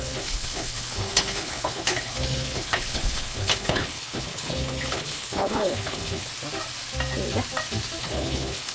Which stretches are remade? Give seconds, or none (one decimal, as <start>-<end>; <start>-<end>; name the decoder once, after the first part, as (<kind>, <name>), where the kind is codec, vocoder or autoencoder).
0.0-6.3 (codec, HILCodec); 8.0-8.7